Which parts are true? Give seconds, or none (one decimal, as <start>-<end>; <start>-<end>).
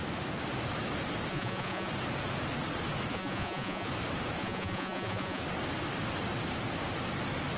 0.0-1.3; 1.9-3.1; 3.9-4.4; 5.4-7.6